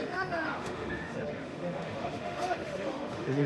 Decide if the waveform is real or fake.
fake